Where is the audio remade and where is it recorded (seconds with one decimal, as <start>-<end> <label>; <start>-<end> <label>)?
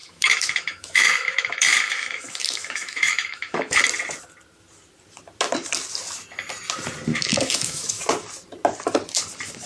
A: 0.0-3.8 remade; 3.8-7.1 recorded; 7.1-8.0 remade; 8.0-9.7 recorded